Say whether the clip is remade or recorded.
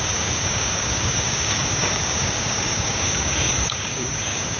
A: remade